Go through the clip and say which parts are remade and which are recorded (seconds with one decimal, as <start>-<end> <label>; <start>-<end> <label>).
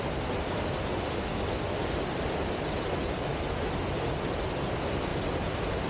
0.0-5.9 recorded